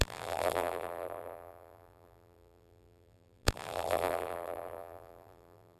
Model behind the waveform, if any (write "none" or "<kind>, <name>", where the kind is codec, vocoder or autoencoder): vocoder, BigVGAN v2